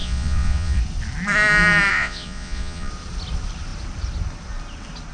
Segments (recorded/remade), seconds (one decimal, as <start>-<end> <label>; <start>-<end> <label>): 0.0-0.8 remade; 0.8-1.9 recorded; 1.9-2.9 remade; 2.9-5.1 recorded